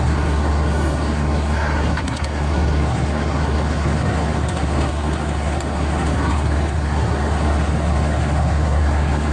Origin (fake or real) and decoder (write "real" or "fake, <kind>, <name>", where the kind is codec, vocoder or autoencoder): fake, codec, SNAC